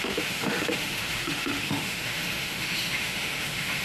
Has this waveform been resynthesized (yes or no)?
yes